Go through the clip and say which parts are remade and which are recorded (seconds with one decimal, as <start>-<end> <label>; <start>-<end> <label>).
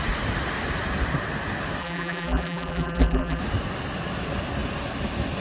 0.0-1.8 recorded; 1.8-3.4 remade; 3.4-5.4 recorded